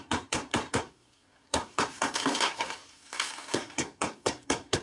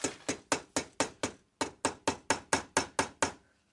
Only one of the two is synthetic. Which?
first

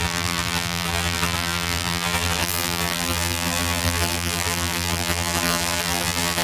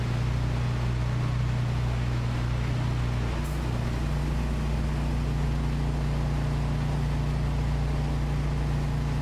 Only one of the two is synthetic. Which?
first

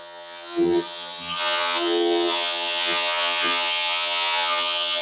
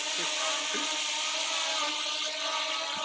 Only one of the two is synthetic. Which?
first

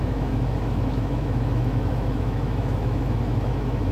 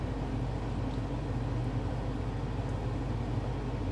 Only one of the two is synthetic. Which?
first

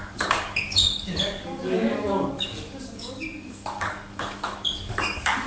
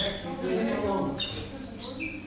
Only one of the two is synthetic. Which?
first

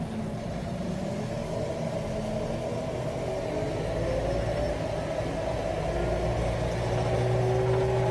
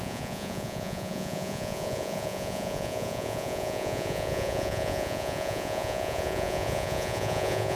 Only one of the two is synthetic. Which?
second